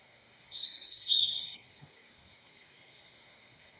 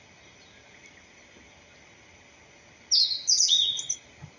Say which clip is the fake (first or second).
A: first